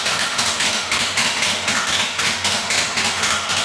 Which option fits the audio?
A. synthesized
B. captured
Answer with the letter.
A